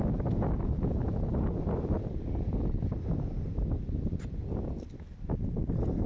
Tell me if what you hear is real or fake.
real